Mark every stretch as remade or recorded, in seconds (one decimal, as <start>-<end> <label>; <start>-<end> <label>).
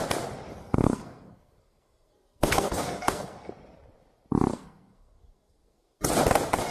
0.0-0.6 recorded; 0.6-3.5 remade; 3.5-4.5 recorded; 4.5-6.0 remade; 6.0-6.7 recorded